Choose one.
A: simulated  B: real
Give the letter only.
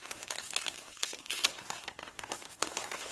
A